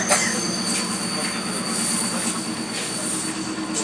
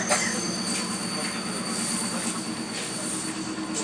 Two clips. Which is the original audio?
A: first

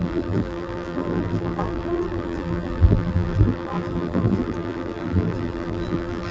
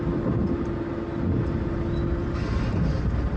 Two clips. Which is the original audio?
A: second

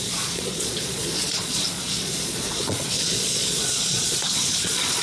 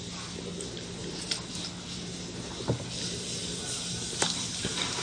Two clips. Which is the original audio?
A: second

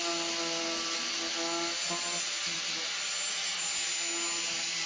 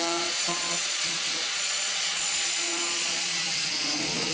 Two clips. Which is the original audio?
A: first